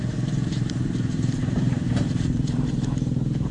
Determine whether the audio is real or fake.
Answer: fake